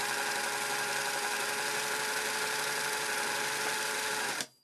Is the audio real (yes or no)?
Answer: yes